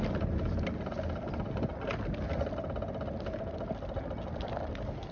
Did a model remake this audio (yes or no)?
no